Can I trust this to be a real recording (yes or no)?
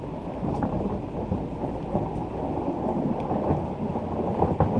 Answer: yes